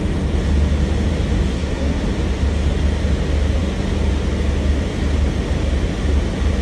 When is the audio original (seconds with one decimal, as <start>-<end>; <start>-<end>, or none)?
0.0-1.5; 2.0-6.6